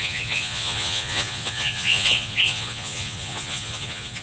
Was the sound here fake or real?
fake